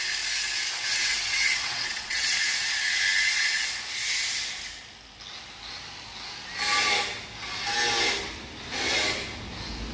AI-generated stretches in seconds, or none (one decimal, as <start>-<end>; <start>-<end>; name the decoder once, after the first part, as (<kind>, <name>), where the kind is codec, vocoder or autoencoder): 0.7-2.4 (vocoder, WaveNeXt)

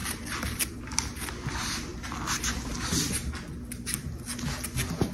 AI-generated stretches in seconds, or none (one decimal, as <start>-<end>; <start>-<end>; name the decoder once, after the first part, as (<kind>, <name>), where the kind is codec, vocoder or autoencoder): 0.0-0.6 (vocoder, BigVGAN v2)